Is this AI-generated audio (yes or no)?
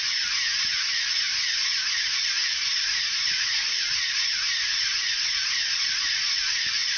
no